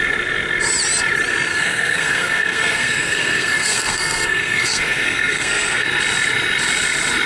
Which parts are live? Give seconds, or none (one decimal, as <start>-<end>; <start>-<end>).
0.0-1.5; 5.9-7.3